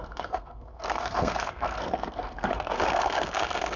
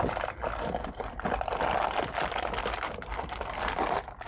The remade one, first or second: first